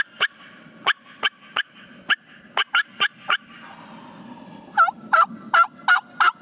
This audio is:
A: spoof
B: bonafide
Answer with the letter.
B